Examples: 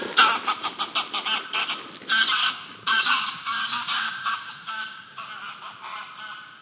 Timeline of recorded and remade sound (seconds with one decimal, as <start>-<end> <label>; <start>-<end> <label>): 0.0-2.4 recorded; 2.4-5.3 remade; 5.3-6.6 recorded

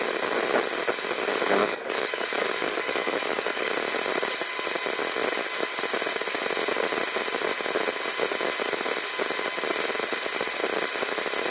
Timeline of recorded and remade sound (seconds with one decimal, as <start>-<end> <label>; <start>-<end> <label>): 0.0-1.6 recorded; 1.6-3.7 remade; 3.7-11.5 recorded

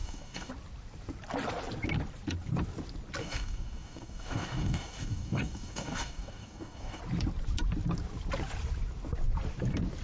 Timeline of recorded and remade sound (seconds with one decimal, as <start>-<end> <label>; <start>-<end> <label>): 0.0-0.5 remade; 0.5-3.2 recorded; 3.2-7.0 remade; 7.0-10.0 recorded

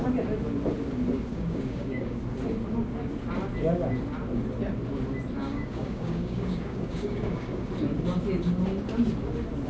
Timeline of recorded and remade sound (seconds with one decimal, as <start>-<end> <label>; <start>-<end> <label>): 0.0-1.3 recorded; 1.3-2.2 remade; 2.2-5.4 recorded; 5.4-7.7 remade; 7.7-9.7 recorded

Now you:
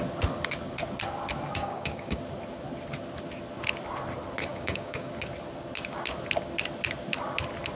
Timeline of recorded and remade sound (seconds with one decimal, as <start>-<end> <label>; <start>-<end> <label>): 0.0-1.6 recorded; 1.6-2.2 remade; 2.2-4.5 recorded; 4.5-5.1 remade; 5.1-7.8 recorded

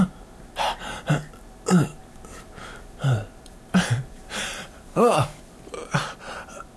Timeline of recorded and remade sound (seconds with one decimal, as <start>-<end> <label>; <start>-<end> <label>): 0.0-4.9 recorded; 4.9-5.4 remade; 5.4-6.8 recorded